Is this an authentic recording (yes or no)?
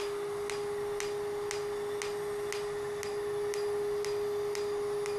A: yes